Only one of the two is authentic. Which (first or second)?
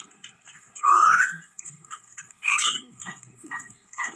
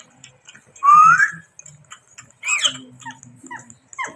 second